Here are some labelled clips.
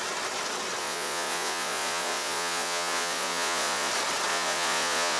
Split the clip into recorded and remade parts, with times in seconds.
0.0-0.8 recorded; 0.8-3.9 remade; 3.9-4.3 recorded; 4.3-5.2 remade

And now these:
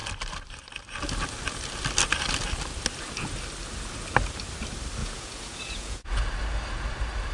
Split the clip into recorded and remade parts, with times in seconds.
0.0-5.0 recorded; 5.0-6.2 remade; 6.2-7.3 recorded

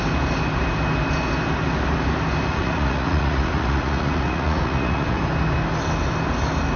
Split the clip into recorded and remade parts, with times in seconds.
0.0-2.5 recorded; 2.5-5.2 remade; 5.2-6.8 recorded

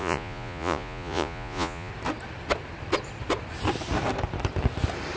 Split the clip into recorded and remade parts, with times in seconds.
0.0-1.9 remade; 1.9-5.2 recorded

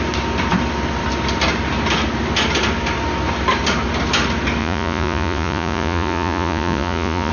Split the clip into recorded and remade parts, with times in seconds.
0.0-4.6 recorded; 4.6-7.3 remade

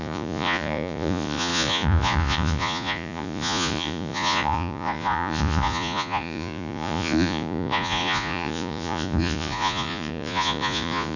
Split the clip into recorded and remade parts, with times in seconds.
0.0-11.2 remade

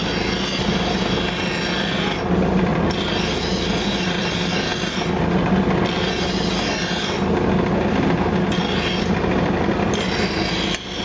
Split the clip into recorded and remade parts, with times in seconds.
0.0-11.0 recorded

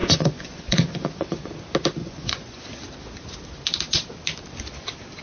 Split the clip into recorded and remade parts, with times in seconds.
0.0-1.5 remade; 1.5-2.0 recorded; 2.0-2.6 remade; 2.6-5.2 recorded